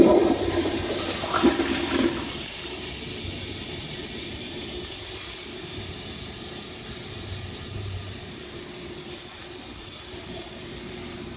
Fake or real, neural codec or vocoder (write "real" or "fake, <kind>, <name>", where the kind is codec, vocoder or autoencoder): fake, vocoder, BigVGAN v2